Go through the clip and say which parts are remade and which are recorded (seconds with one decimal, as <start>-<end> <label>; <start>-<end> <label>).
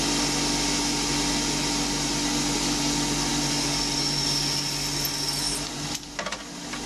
0.0-6.9 recorded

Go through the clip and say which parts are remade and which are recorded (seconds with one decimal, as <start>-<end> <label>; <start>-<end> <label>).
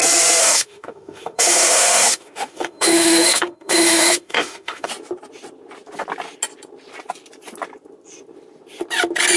0.0-0.4 recorded; 0.4-4.9 remade; 4.9-9.4 recorded